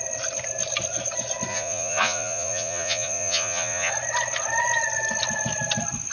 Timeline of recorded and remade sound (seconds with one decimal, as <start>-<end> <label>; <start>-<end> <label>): 0.0-1.5 recorded; 1.5-3.9 remade; 3.9-6.1 recorded